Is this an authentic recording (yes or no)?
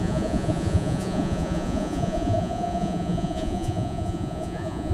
no